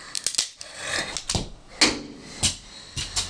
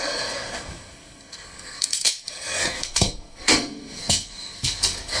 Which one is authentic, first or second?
first